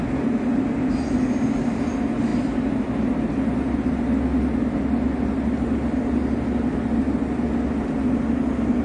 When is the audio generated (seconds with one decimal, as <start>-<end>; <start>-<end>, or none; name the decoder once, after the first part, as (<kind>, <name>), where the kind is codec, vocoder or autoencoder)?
none